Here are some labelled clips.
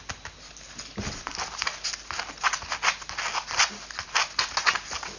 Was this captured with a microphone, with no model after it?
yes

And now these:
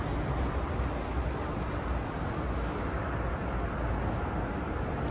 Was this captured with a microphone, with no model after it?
yes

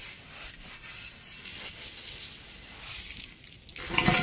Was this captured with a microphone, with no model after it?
yes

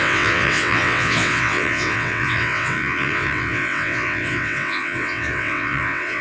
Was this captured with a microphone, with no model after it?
no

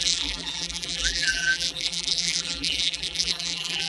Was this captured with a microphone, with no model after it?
no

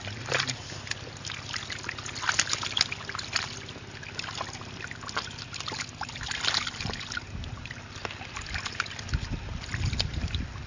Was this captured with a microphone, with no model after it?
yes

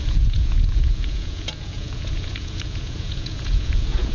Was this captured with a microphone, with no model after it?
no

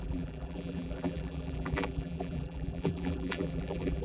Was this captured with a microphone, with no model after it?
no